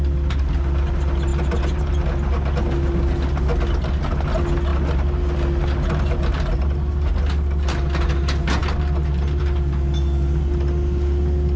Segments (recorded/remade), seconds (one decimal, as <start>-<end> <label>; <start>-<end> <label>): 0.0-11.6 recorded